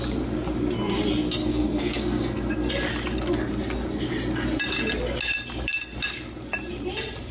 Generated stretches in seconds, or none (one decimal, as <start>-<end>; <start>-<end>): 1.4-2.7